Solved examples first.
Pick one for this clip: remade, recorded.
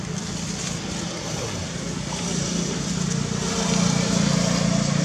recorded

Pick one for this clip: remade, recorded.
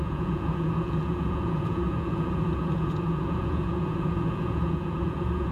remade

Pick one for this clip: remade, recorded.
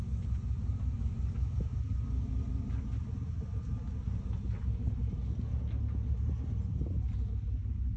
recorded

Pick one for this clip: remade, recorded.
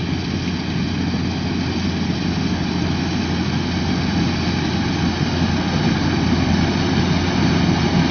recorded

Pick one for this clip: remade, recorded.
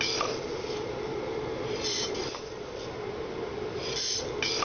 recorded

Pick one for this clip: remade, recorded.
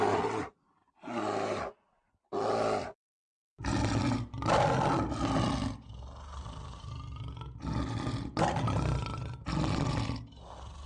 recorded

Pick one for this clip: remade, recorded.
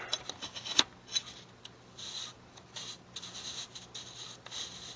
recorded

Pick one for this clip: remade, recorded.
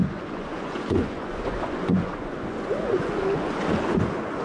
remade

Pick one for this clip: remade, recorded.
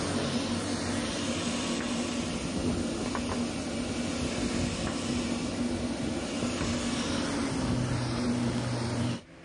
recorded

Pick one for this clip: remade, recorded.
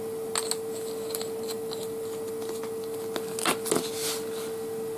recorded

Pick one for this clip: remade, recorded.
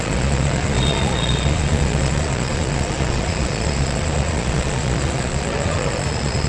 remade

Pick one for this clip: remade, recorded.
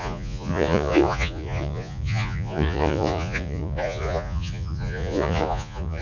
remade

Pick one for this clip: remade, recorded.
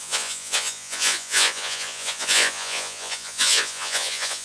remade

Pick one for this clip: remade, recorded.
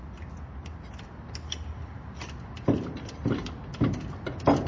recorded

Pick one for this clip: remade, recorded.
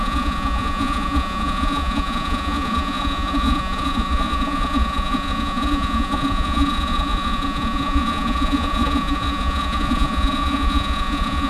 remade